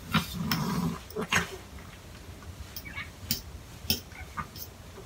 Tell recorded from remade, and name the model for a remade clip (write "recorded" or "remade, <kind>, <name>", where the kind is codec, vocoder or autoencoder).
recorded